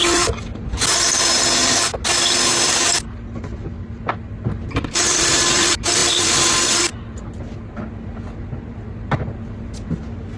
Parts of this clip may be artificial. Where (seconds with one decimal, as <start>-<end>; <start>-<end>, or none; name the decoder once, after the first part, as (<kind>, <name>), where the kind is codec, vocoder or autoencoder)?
none